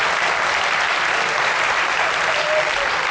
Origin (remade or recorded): remade